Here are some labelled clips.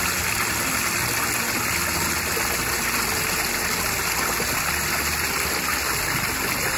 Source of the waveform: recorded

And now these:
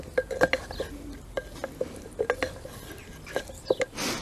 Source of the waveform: recorded